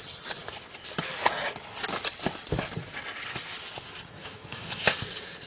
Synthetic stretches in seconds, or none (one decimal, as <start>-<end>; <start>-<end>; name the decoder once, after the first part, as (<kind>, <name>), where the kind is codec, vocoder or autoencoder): 4.2-4.9 (autoencoder, DAC-VAE)